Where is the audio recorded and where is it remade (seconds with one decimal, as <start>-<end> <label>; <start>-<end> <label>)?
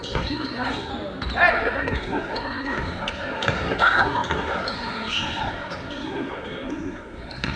0.0-0.9 remade; 0.9-1.5 recorded; 1.5-7.6 remade